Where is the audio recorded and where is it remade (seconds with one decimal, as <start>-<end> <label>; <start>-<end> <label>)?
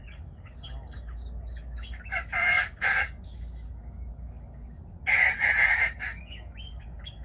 0.0-4.8 remade; 4.8-5.7 recorded; 5.7-7.2 remade